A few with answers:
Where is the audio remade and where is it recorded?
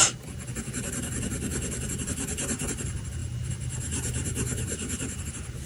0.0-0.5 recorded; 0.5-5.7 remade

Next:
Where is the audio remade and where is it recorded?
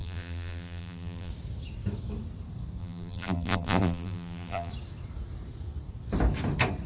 0.0-1.3 remade; 1.3-2.8 recorded; 2.8-4.7 remade; 4.7-6.9 recorded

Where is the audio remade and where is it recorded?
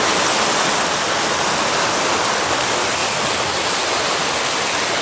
0.0-5.0 recorded